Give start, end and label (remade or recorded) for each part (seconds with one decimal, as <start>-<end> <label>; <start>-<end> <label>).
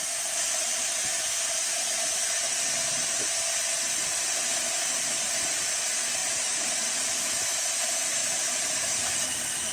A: 0.0-6.2 recorded; 6.2-7.4 remade; 7.4-8.2 recorded; 8.2-9.7 remade